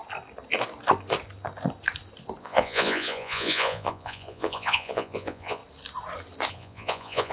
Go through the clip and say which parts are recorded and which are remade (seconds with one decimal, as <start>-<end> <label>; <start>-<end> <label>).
0.0-2.4 recorded; 2.4-5.6 remade; 5.6-6.5 recorded; 6.5-7.3 remade